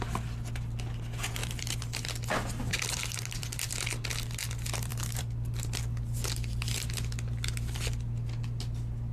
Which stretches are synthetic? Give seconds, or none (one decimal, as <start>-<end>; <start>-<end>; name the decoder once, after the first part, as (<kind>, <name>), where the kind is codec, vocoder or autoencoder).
1.4-3.7 (vocoder, BigVGAN v2); 4.9-5.5